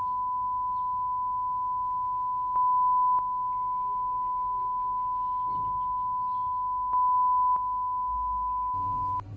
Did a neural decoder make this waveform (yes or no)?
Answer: no